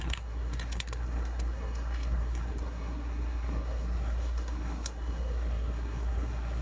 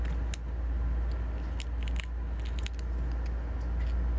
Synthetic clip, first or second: first